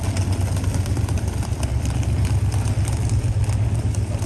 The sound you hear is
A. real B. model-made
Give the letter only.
A